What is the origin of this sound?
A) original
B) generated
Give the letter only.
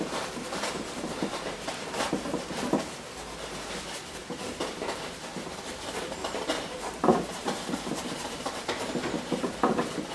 B